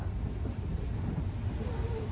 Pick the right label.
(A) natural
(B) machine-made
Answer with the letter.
A